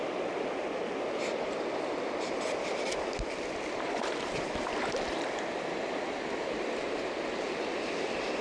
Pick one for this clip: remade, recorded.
recorded